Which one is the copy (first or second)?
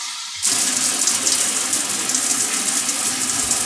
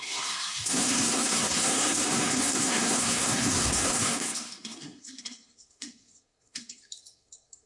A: second